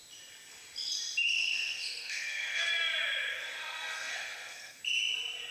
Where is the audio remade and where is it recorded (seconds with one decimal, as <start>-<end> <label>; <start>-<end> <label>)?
0.0-1.3 recorded; 1.3-2.7 remade; 2.7-3.3 recorded; 3.3-4.8 remade; 4.8-5.5 recorded